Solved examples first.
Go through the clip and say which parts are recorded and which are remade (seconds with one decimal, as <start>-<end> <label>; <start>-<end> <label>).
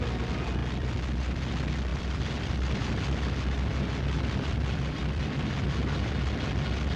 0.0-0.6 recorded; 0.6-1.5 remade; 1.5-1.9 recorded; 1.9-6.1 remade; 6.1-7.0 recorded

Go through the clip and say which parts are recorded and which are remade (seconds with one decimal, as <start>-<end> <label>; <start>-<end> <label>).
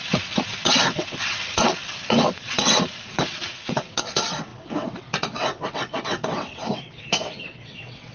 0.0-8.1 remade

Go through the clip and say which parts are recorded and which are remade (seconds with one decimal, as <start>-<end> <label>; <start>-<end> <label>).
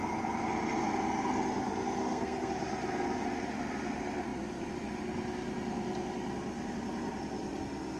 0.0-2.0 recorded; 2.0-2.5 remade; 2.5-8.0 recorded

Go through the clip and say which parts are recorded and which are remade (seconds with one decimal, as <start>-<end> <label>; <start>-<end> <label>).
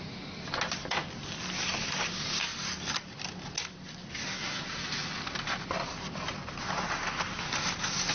0.0-8.1 recorded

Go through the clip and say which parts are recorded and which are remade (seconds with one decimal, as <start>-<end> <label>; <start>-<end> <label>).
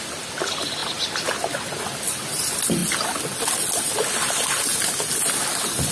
0.0-5.9 recorded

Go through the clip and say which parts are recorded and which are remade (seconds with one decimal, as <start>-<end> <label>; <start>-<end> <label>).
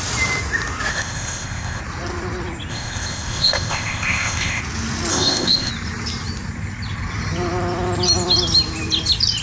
0.0-0.9 recorded; 0.9-1.8 remade; 1.8-2.7 recorded; 2.7-4.6 remade; 4.6-5.1 recorded; 5.1-5.7 remade; 5.7-9.4 recorded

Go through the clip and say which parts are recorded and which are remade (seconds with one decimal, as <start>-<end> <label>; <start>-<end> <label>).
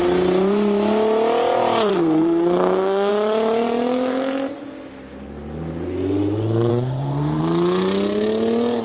0.0-1.9 recorded; 1.9-3.1 remade; 3.1-6.7 recorded; 6.7-7.4 remade; 7.4-8.8 recorded